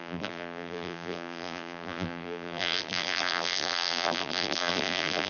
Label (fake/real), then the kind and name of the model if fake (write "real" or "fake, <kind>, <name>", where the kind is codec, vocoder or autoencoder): fake, vocoder, BigVGAN v2